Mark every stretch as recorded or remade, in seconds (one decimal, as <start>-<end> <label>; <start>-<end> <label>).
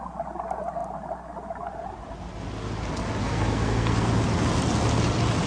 0.0-3.2 recorded; 3.2-4.1 remade; 4.1-5.5 recorded